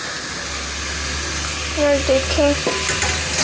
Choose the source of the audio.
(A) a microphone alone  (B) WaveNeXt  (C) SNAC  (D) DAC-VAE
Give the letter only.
A